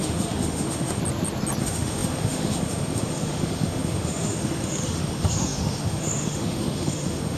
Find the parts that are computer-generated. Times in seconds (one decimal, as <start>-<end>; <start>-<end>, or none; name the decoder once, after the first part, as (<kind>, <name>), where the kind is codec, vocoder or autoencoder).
0.0-1.0 (autoencoder, DAC-VAE); 1.6-7.4